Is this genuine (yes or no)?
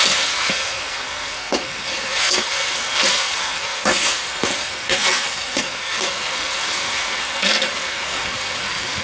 no